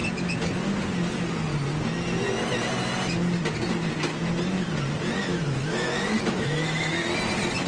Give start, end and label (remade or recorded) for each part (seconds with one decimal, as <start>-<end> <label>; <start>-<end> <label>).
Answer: 0.0-5.3 recorded; 5.3-7.1 remade; 7.1-7.7 recorded

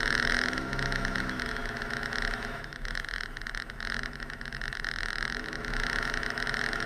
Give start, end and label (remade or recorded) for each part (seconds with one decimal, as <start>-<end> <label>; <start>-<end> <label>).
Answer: 0.0-6.9 remade